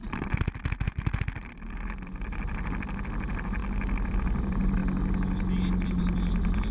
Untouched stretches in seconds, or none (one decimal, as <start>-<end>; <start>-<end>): 3.6-4.1; 4.8-5.7